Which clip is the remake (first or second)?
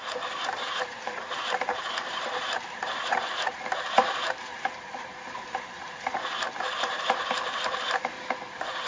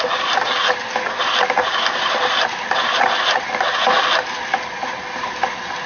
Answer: first